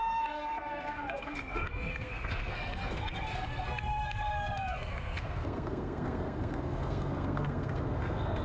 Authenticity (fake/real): fake